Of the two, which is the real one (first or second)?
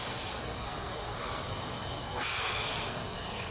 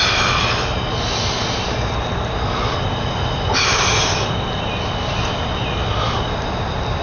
second